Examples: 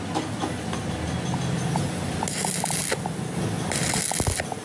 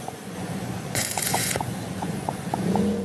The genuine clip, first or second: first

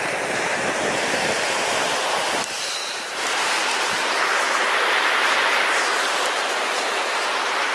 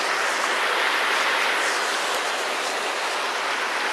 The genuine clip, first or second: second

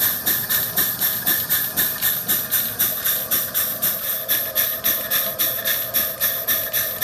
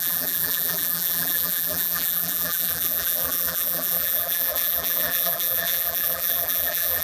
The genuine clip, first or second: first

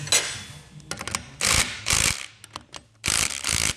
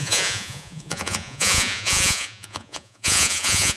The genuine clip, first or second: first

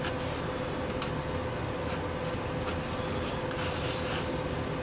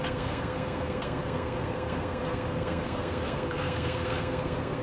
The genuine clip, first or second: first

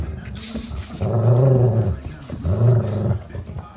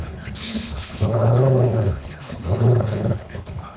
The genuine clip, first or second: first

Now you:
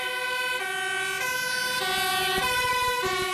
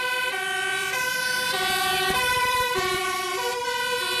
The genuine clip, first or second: first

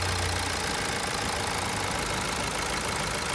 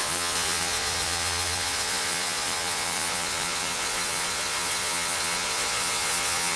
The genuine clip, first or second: first